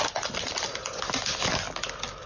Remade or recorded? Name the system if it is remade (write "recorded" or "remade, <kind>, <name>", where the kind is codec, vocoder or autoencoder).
recorded